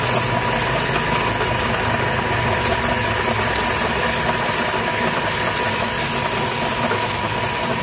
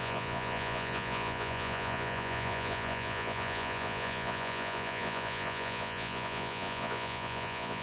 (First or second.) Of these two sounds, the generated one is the second